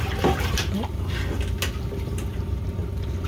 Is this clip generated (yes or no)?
no